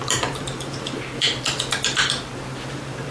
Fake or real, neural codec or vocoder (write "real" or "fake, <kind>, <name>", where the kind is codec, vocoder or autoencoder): fake, vocoder, BigVGAN v2